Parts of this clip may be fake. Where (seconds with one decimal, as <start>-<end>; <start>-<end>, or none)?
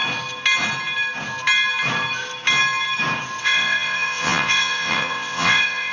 3.4-5.9